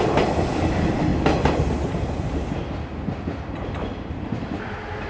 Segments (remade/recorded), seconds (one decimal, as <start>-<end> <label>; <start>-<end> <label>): 0.0-5.1 recorded